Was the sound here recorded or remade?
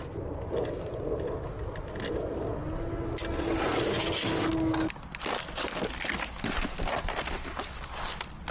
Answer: recorded